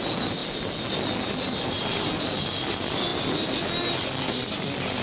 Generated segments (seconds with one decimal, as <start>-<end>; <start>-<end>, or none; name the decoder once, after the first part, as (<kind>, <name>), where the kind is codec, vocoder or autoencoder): none